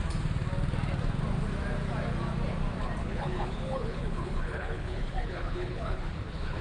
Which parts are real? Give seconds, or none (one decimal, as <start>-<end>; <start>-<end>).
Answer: 0.0-3.0